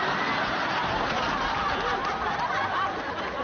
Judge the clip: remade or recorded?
recorded